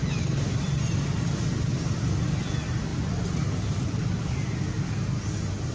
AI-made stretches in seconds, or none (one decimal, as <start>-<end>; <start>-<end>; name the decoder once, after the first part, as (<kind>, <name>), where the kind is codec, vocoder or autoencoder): none